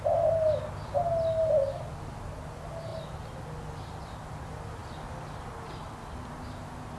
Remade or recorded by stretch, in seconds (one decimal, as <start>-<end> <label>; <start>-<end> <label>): 0.0-7.0 recorded